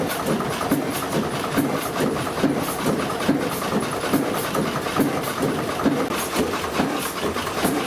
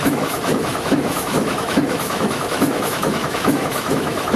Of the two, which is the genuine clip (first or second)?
first